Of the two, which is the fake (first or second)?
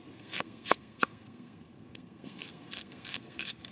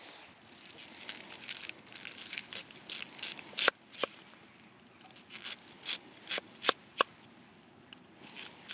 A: first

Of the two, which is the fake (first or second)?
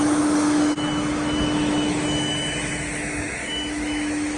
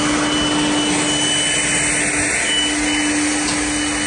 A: first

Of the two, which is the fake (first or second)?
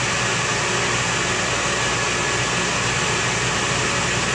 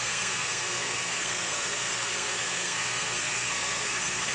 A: second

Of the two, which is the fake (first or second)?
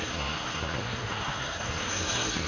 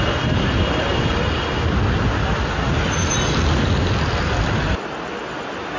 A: first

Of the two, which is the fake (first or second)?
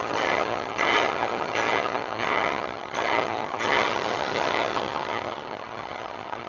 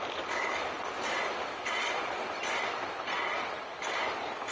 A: first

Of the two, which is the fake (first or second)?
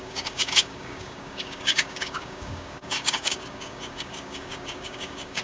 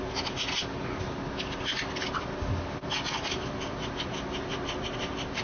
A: first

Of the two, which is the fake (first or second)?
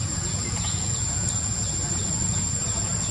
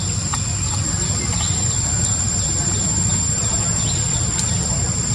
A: first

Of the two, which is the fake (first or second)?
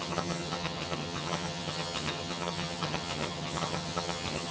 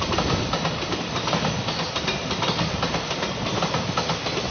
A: first